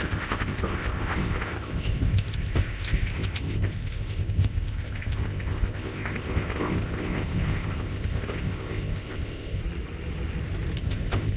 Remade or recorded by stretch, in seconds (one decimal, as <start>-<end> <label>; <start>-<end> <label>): 0.0-9.6 remade; 9.6-10.8 recorded; 10.8-11.4 remade